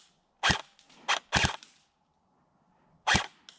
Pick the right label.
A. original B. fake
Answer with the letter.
A